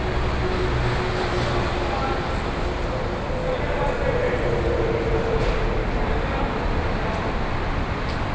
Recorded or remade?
recorded